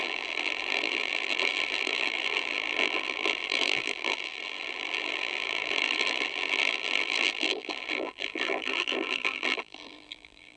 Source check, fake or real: fake